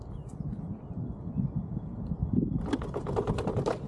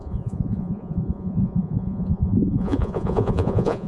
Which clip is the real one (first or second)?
first